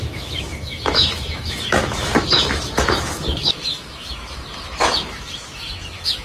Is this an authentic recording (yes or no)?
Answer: no